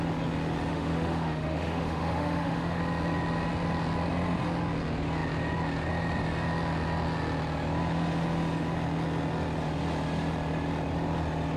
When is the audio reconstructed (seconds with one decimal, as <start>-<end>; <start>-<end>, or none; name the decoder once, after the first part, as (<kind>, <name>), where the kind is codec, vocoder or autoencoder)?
0.7-2.8 (autoencoder, DAC-VAE)